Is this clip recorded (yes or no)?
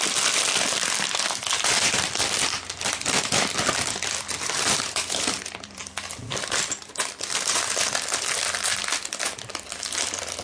no